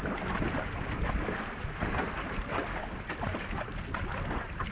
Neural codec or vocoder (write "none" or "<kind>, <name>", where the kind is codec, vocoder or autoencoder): none